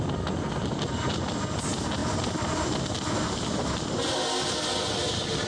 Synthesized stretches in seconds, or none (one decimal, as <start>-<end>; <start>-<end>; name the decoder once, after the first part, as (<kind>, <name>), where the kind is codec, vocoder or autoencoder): none